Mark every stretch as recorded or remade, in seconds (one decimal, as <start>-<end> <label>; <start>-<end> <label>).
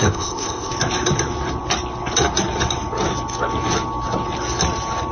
0.0-0.7 remade; 0.7-5.1 recorded